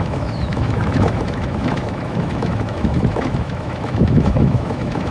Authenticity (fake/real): fake